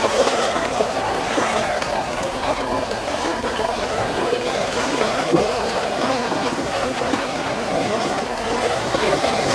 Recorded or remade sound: remade